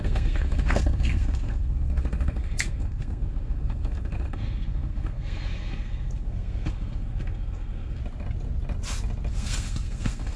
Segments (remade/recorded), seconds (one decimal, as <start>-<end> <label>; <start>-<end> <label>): 0.0-8.0 remade; 8.0-9.3 recorded; 9.3-10.4 remade